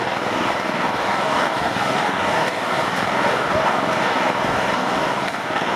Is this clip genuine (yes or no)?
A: no